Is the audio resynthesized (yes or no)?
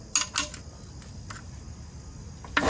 no